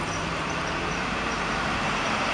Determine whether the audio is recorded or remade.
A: remade